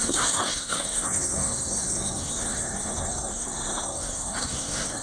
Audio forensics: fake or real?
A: fake